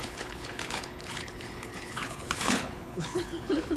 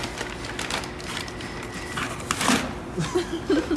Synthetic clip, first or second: first